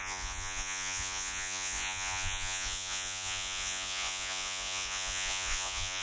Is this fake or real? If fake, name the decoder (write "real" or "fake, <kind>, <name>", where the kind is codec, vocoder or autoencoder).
fake, vocoder, Vocos